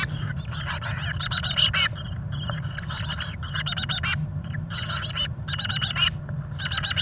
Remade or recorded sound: recorded